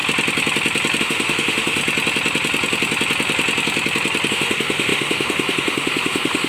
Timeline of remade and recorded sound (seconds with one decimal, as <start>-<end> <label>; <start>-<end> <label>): 0.0-1.0 recorded; 1.0-1.8 remade; 1.8-4.3 recorded; 4.3-6.5 remade